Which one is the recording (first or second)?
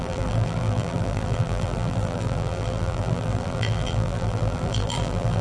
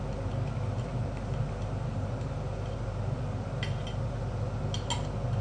second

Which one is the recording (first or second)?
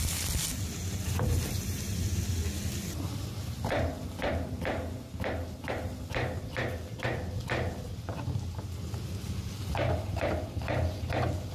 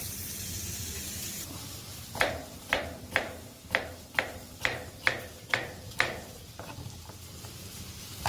first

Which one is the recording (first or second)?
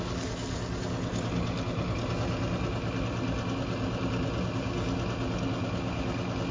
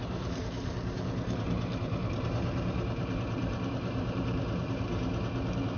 first